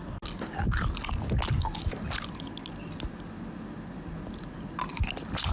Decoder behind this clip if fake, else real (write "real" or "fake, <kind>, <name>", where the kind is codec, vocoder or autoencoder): real